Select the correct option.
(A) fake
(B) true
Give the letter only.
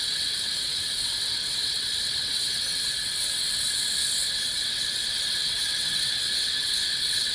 A